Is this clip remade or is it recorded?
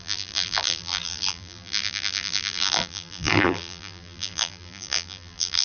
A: remade